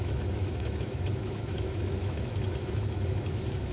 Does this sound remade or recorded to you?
remade